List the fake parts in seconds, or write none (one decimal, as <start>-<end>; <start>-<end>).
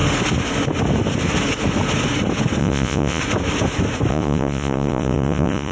2.6-3.2; 4.1-5.7